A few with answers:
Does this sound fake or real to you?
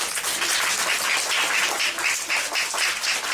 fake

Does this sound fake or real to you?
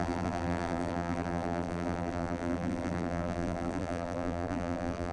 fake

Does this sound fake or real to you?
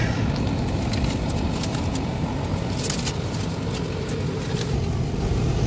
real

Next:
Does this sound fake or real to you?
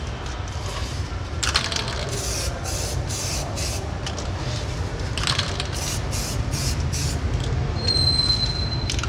fake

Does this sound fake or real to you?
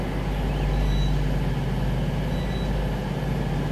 real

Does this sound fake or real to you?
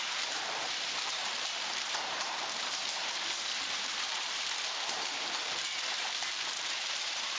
fake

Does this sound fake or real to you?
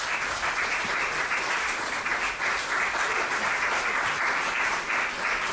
fake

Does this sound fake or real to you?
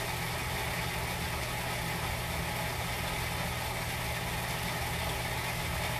real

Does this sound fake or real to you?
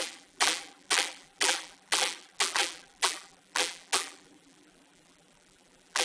fake